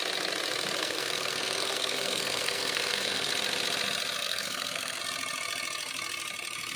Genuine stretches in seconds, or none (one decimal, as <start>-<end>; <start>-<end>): 0.0-0.8; 3.3-4.2; 5.0-6.8

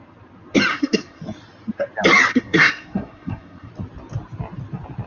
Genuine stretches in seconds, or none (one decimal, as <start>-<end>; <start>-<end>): 0.0-0.7; 1.2-2.3; 3.7-5.1

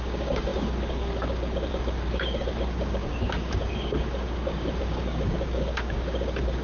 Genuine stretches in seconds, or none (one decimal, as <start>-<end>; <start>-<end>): none

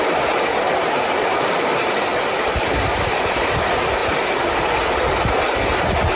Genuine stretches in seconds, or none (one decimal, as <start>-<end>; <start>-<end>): 4.0-6.1

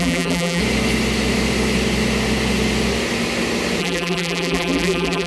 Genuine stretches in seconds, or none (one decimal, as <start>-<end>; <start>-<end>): 0.6-3.8